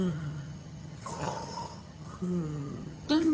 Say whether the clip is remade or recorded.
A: remade